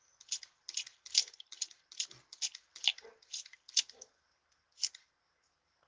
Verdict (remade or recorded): recorded